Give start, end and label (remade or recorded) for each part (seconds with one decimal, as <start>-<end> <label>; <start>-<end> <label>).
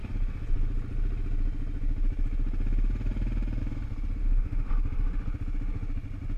0.0-4.2 recorded; 4.2-4.7 remade; 4.7-6.4 recorded